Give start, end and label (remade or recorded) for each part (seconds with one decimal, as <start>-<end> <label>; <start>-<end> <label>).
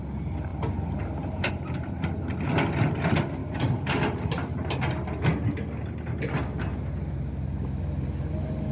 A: 0.0-0.5 recorded; 0.5-1.5 remade; 1.5-3.4 recorded; 3.4-4.8 remade; 4.8-8.7 recorded